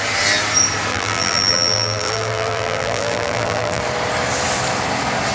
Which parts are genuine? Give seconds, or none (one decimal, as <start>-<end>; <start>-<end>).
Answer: 0.0-0.9; 3.8-5.3